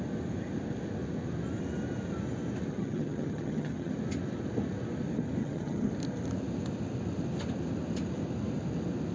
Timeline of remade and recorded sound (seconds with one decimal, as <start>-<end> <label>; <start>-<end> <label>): 0.0-2.7 recorded; 2.7-3.9 remade; 3.9-5.4 recorded; 5.4-5.9 remade; 5.9-9.1 recorded